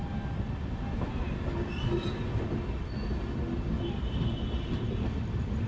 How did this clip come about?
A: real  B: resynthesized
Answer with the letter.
A